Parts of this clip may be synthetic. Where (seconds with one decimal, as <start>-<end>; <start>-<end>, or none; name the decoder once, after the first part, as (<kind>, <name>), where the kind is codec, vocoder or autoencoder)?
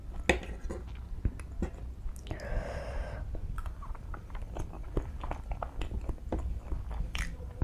3.6-7.6 (vocoder, BigVGAN v2)